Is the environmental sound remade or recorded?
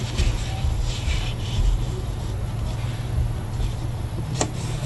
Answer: remade